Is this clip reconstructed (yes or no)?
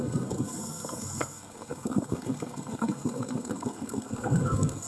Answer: yes